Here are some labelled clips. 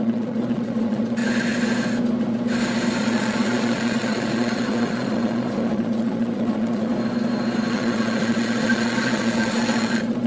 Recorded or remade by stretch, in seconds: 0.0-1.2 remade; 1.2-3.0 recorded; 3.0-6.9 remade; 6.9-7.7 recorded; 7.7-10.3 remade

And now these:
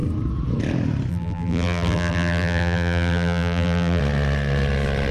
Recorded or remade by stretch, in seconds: 0.0-1.1 recorded; 1.1-4.0 remade; 4.0-5.1 recorded

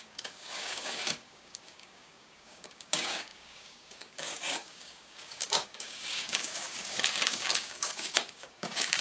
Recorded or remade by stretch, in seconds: 0.0-9.0 remade

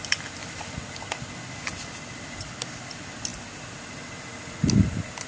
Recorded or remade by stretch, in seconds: 0.0-3.3 remade; 3.3-5.3 recorded